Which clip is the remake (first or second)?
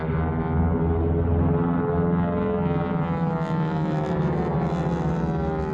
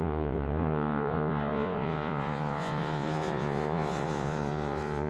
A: second